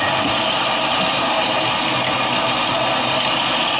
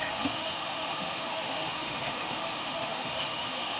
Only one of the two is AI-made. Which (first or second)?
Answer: second